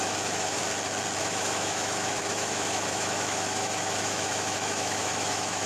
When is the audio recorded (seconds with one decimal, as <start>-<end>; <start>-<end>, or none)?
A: 0.6-1.2